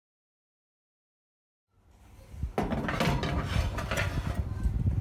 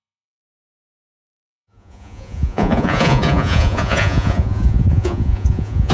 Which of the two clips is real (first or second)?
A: first